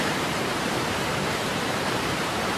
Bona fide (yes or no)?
no